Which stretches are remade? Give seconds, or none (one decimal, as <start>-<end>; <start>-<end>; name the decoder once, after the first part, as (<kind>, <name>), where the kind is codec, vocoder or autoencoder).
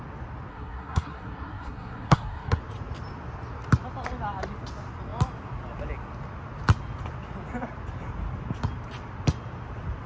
0.5-2.6 (codec, SNAC)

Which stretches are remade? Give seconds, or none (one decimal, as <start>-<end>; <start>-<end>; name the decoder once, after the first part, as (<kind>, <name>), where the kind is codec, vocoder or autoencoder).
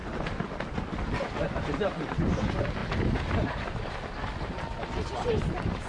none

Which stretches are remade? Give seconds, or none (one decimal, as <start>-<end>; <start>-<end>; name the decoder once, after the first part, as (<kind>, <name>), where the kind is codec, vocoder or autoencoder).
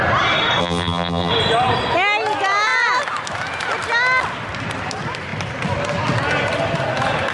0.6-1.3 (vocoder, BigVGAN v2)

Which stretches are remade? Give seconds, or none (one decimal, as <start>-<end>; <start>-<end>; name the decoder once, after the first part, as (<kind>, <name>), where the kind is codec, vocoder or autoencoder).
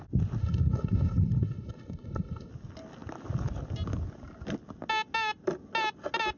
0.4-2.5 (codec, HILCodec)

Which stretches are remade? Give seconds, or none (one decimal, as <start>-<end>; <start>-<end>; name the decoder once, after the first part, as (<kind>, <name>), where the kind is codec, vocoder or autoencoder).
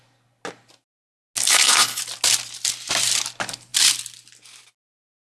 1.5-2.0 (codec, HILCodec)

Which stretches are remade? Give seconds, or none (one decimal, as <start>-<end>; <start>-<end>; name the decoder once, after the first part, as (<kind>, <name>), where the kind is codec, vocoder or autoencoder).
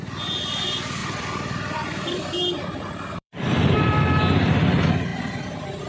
1.0-4.5 (vocoder, BigVGAN v2)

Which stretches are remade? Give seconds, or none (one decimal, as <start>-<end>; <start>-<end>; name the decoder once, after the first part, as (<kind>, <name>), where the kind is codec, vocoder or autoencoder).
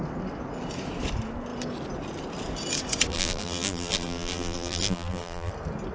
3.1-5.5 (vocoder, BigVGAN v2)